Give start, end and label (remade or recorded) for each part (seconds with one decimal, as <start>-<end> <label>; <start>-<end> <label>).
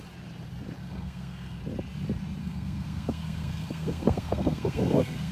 0.0-0.8 recorded; 0.8-1.6 remade; 1.6-2.4 recorded; 2.4-5.3 remade